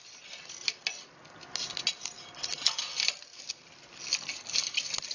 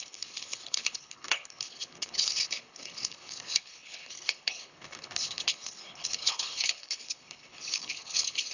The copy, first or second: second